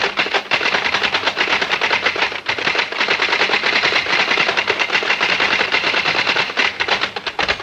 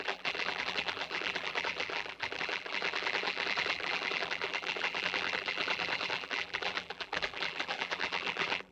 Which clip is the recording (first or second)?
first